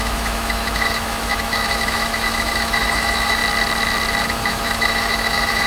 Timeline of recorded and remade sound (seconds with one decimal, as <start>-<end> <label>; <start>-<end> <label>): 0.0-3.4 remade; 3.4-4.2 recorded; 4.2-5.7 remade